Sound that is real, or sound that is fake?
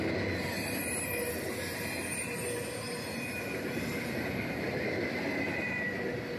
real